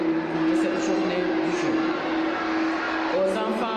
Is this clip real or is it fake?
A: real